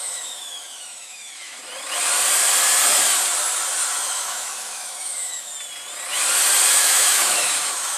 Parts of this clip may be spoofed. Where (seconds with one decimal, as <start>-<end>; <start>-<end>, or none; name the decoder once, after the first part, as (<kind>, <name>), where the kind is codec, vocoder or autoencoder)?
0.0-1.6 (autoencoder, DAC-VAE); 4.1-5.5; 6.7-8.0